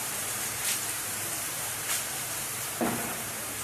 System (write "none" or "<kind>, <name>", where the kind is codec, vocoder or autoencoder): vocoder, BigVGAN v2